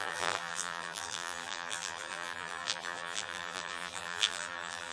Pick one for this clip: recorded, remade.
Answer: remade